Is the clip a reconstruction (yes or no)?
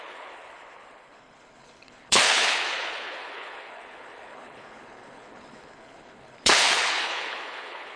yes